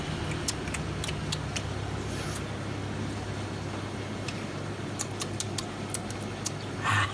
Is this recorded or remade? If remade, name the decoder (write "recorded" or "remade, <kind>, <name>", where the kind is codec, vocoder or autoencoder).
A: recorded